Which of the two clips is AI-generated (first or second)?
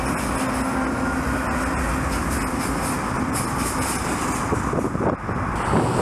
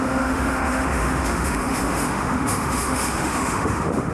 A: second